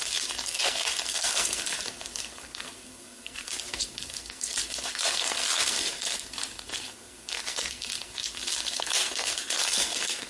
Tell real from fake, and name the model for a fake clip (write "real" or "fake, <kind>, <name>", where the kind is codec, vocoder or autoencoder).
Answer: fake, codec, SNAC